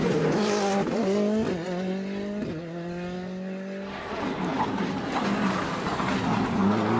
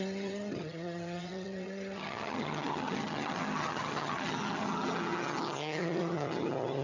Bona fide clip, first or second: first